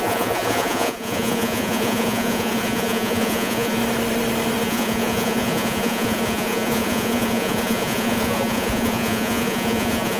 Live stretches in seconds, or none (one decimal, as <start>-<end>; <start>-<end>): 3.8-4.6